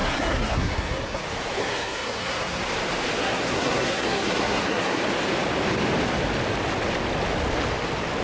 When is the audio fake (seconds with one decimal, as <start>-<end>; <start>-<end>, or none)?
0.0-1.2; 1.6-2.6; 3.2-5.0